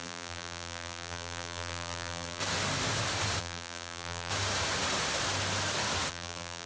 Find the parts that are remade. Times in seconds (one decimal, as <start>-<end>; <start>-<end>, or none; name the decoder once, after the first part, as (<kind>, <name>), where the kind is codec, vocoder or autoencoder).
0.0-2.4 (vocoder, BigVGAN v2); 3.4-4.3; 6.1-6.7